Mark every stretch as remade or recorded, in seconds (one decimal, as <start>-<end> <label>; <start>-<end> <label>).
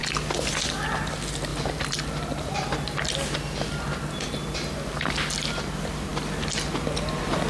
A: 0.0-1.5 recorded; 1.5-2.0 remade; 2.0-7.5 recorded